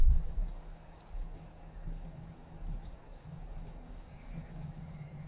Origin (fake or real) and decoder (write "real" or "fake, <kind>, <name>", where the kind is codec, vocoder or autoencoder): fake, codec, DAC